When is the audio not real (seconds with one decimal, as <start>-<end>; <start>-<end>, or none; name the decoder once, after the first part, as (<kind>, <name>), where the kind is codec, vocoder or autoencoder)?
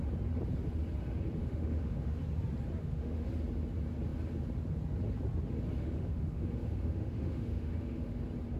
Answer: 1.4-2.2 (autoencoder, DAC-VAE); 2.8-3.3; 5.8-8.2